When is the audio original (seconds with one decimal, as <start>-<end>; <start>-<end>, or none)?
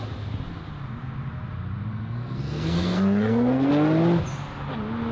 0.0-1.9; 3.7-5.1